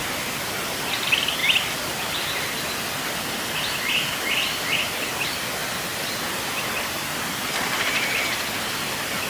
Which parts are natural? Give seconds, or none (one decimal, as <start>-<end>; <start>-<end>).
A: 0.0-9.3